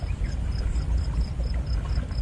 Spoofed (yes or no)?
no